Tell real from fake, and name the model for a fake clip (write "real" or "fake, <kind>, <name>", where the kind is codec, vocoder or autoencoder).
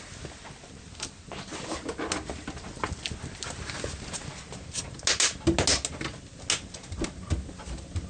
real